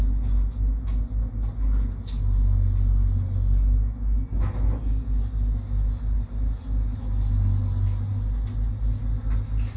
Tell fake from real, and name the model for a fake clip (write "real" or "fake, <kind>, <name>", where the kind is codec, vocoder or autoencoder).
real